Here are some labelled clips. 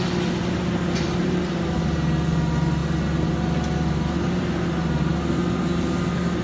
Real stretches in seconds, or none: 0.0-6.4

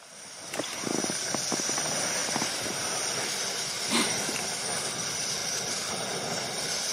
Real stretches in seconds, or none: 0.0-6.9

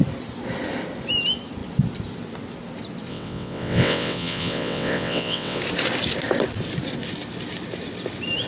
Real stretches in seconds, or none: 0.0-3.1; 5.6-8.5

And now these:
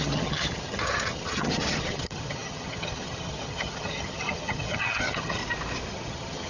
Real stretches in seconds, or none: 5.4-5.9

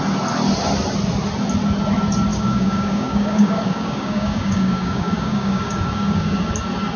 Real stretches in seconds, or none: 0.0-2.3; 6.5-7.0

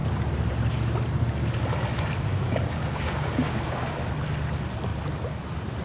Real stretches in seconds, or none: 0.0-2.3; 4.1-5.8